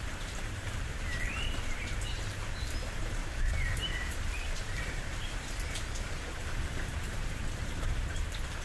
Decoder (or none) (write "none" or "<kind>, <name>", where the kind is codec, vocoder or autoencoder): vocoder, BigVGAN v2